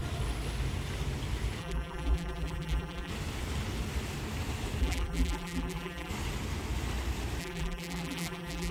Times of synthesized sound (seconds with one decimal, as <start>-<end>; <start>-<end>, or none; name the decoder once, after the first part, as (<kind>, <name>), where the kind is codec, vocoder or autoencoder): 1.6-3.1 (vocoder, BigVGAN v2); 4.8-6.1; 7.4-8.7